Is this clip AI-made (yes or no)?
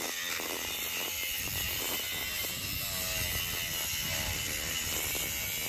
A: no